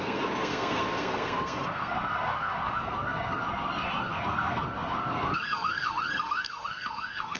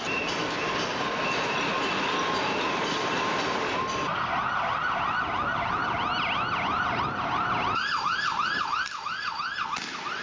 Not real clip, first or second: first